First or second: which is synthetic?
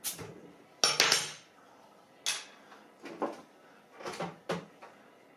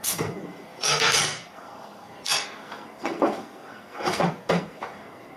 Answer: second